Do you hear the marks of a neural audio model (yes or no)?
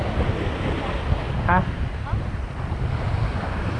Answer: no